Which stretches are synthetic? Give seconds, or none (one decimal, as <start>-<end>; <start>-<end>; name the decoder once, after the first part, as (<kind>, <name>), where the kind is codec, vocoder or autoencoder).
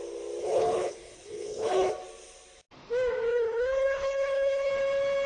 0.4-1.9 (codec, HILCodec); 3.3-4.7